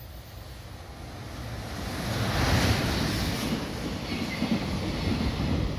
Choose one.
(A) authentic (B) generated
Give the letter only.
A